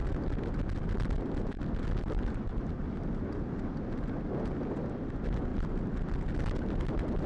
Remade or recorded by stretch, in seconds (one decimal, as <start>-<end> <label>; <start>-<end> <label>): 0.0-7.3 recorded